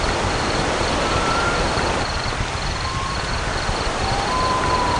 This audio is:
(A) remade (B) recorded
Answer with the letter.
A